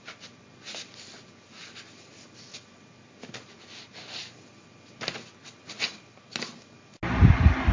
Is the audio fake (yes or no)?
no